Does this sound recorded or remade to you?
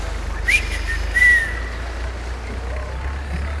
recorded